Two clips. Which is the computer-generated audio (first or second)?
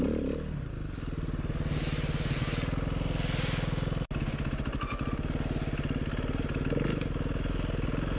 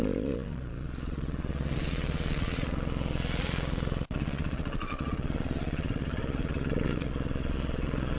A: second